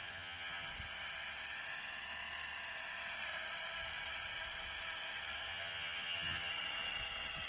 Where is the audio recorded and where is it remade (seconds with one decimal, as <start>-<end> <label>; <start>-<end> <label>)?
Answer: 0.0-0.7 remade; 0.7-5.5 recorded; 5.5-6.5 remade; 6.5-7.5 recorded